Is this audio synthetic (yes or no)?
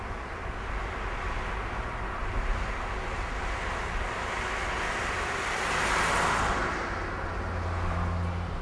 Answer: no